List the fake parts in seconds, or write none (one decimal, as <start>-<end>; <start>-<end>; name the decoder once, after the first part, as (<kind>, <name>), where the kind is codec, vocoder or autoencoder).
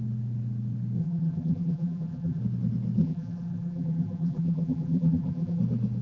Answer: 1.0-2.4 (vocoder, BigVGAN v2); 3.0-5.6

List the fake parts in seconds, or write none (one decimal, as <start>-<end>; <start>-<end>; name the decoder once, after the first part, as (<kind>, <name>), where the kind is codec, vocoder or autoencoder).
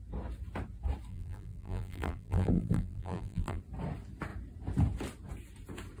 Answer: 1.1-3.6 (vocoder, BigVGAN v2)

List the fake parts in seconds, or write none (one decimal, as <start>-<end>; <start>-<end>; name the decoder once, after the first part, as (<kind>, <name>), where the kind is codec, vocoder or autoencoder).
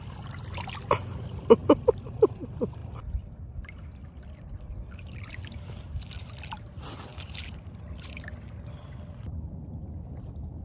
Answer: 1.6-2.4 (vocoder, BigVGAN v2); 7.1-7.6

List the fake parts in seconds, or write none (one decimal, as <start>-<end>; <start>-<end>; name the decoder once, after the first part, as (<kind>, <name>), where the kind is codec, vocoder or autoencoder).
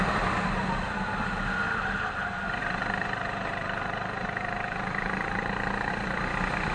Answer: 2.6-5.9 (vocoder, BigVGAN v2)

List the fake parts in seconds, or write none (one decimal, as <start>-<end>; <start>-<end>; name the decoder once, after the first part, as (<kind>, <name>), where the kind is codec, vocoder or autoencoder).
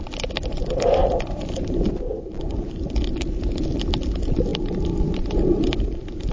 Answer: 1.0-2.9 (vocoder, BigVGAN v2); 4.5-6.3